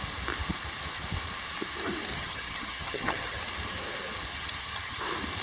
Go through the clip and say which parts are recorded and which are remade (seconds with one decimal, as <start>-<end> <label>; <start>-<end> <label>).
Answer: 0.0-2.1 recorded; 2.1-3.4 remade; 3.4-4.3 recorded; 4.3-5.0 remade; 5.0-5.4 recorded